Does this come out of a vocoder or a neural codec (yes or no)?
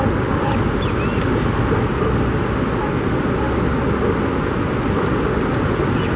no